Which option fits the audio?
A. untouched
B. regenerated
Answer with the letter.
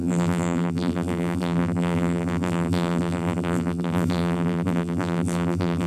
B